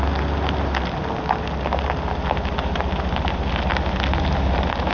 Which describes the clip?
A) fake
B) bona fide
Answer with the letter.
B